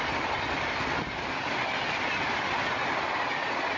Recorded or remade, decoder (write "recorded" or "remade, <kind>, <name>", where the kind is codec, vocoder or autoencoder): recorded